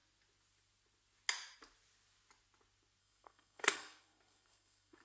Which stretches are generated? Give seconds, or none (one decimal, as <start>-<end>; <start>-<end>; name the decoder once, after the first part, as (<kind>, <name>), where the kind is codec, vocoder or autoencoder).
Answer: 3.0-5.0 (codec, SNAC)